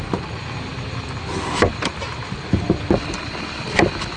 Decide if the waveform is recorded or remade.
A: recorded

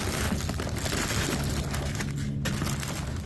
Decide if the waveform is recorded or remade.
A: recorded